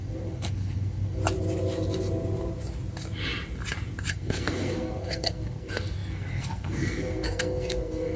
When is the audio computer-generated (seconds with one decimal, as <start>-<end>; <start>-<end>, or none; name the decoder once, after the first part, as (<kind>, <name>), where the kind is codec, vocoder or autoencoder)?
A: 0.0-1.2 (codec, SNAC); 4.1-8.2